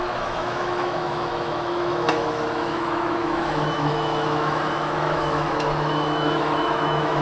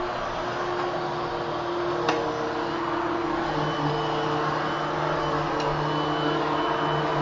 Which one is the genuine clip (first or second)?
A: second